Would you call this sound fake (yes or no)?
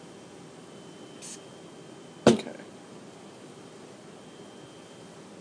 no